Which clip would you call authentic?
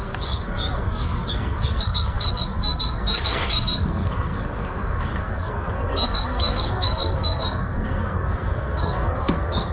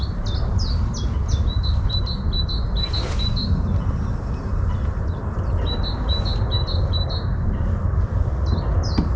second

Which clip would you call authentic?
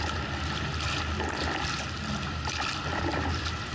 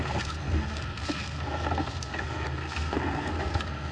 first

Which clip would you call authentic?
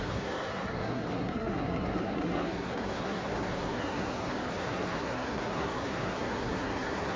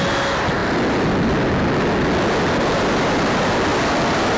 second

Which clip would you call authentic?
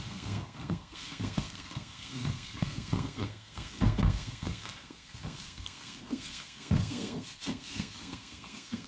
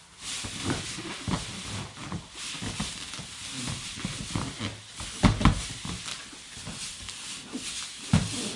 second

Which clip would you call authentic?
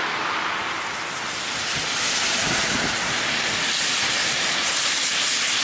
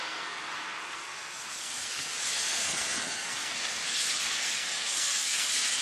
first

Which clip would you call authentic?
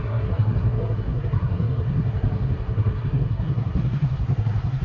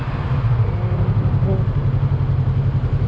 second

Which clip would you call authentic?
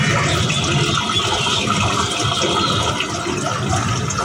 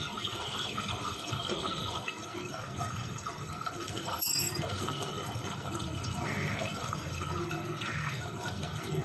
first